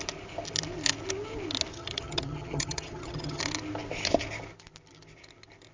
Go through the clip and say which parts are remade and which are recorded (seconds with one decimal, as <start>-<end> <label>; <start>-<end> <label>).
0.0-1.7 recorded; 1.7-3.4 remade; 3.4-5.7 recorded